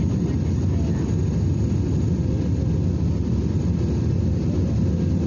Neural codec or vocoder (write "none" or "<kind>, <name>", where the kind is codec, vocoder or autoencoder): none